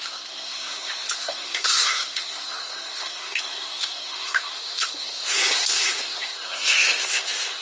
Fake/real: fake